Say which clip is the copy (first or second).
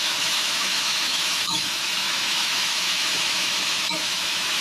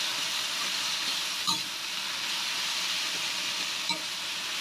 first